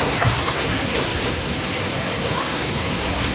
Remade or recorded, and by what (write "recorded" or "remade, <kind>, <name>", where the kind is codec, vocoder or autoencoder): remade, codec, SNAC